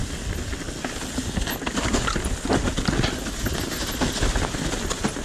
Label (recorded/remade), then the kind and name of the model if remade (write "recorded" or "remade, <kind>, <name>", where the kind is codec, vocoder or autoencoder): recorded